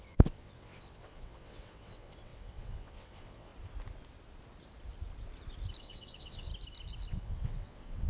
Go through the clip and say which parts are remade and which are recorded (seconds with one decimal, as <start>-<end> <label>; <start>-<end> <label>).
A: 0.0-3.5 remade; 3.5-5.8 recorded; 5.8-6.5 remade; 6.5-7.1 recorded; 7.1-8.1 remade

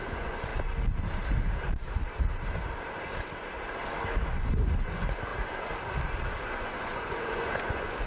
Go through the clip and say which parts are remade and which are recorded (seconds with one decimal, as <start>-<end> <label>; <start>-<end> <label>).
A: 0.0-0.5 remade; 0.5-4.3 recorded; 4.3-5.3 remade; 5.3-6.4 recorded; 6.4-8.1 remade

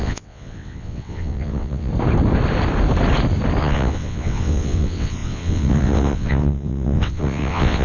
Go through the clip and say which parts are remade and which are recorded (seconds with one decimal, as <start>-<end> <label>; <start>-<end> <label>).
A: 0.0-1.9 remade; 1.9-3.6 recorded; 3.6-7.8 remade